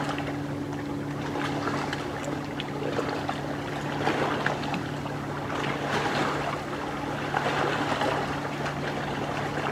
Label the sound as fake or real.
real